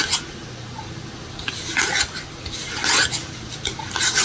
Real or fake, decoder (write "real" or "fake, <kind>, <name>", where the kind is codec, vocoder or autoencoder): real